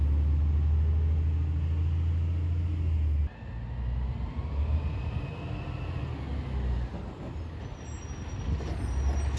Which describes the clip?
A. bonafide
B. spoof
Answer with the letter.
A